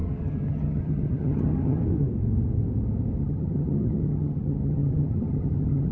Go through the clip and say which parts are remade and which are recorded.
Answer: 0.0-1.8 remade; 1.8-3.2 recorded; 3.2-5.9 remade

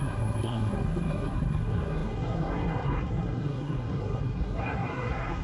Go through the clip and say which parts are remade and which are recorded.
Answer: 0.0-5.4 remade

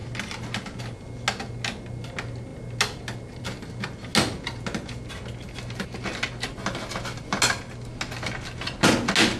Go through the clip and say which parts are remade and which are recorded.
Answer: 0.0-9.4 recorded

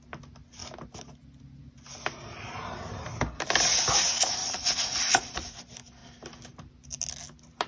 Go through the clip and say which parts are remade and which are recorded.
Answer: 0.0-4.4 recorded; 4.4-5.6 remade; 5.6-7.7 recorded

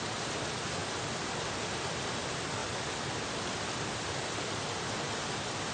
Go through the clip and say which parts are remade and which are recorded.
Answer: 0.0-5.7 recorded

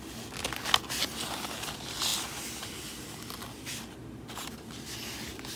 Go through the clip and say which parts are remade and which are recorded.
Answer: 0.0-5.6 recorded